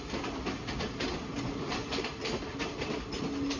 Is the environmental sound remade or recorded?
recorded